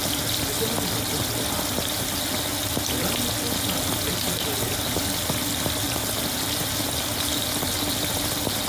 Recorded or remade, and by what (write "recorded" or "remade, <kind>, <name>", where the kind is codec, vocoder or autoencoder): recorded